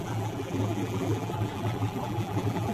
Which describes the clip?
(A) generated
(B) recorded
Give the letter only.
A